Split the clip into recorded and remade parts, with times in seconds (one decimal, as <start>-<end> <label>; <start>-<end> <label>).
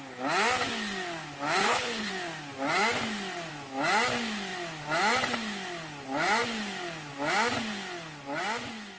0.0-1.6 recorded; 1.6-2.1 remade; 2.1-9.0 recorded